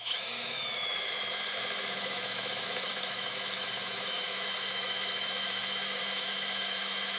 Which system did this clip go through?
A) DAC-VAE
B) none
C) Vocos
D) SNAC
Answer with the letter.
A